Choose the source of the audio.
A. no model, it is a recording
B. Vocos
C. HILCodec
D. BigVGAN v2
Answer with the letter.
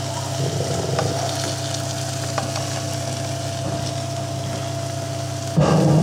A